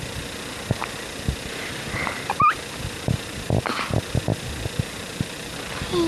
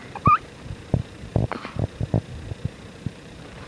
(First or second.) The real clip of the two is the first